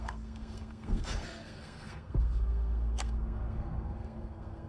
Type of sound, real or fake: fake